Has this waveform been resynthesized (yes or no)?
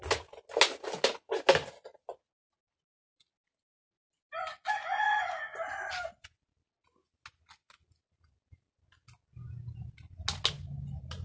no